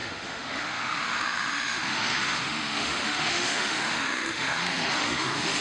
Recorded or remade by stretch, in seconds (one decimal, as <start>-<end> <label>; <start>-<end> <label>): 0.0-5.6 remade